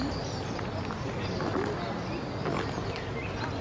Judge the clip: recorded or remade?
recorded